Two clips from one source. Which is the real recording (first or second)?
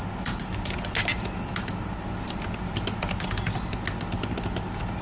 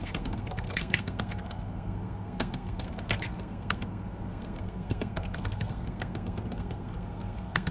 first